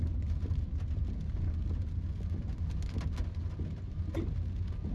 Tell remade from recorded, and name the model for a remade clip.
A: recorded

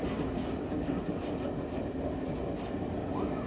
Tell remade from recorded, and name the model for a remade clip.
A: recorded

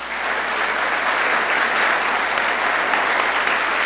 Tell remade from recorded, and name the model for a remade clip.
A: recorded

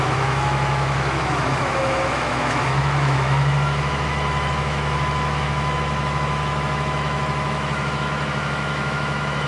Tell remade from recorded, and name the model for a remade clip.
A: remade, autoencoder, DAC-VAE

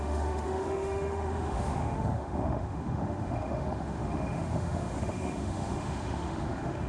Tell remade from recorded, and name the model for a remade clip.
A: remade, autoencoder, DAC-VAE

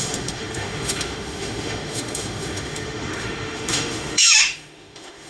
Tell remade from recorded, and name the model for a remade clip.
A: remade, autoencoder, DAC-VAE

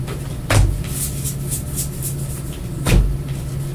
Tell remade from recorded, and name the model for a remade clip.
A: recorded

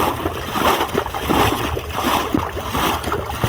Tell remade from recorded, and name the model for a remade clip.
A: recorded